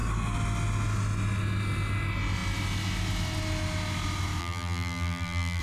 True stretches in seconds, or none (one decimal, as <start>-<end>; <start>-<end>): 0.0-4.4